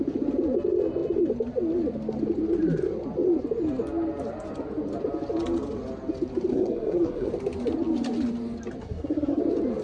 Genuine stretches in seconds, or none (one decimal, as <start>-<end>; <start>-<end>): 0.0-6.5; 7.3-8.8; 9.4-9.8